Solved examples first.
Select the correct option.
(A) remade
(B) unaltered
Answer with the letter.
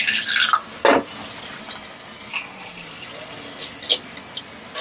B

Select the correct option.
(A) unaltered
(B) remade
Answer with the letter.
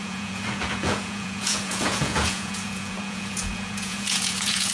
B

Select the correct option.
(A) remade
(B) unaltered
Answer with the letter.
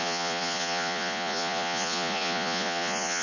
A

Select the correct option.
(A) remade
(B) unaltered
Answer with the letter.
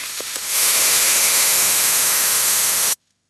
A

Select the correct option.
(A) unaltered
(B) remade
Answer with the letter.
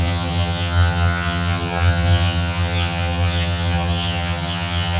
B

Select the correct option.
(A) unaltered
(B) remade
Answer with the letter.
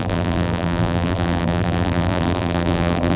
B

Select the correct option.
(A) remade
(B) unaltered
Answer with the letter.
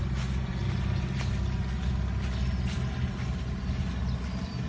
B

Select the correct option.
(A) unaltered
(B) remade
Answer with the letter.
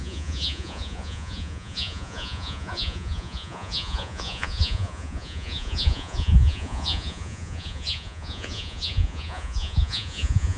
B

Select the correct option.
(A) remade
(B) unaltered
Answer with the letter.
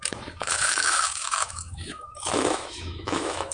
A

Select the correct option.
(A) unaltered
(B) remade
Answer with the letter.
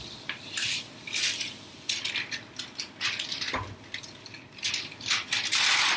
B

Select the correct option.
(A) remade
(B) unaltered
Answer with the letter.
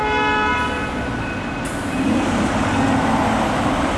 B